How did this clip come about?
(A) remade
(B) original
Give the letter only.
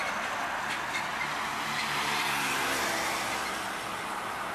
B